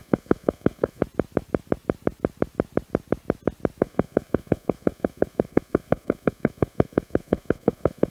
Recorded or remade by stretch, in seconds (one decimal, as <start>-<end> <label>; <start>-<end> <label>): 0.0-1.0 remade; 1.0-3.8 recorded; 3.8-8.1 remade